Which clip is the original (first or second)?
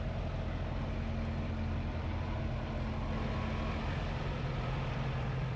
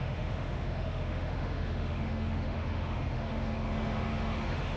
first